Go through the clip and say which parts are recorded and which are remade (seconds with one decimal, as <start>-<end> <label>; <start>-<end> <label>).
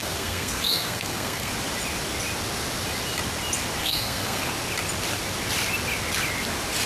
0.0-1.5 remade; 1.5-3.8 recorded; 3.8-4.5 remade; 4.5-6.9 recorded